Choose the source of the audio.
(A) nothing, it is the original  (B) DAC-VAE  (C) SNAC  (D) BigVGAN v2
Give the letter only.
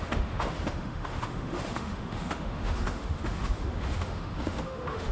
B